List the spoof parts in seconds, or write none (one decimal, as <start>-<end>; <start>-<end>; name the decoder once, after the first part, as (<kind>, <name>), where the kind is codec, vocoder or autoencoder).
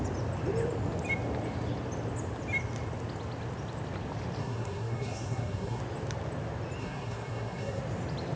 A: 4.4-5.8 (codec, SNAC); 6.8-7.8